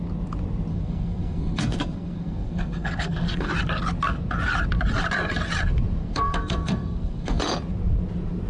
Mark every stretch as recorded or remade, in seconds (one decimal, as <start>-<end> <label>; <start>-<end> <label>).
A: 0.0-0.7 recorded; 0.7-3.5 remade; 3.5-6.0 recorded; 6.0-7.4 remade; 7.4-8.5 recorded